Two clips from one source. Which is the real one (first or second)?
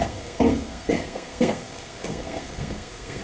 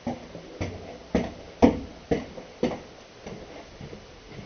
second